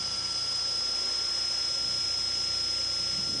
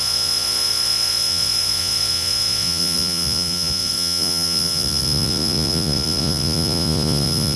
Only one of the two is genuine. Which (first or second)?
first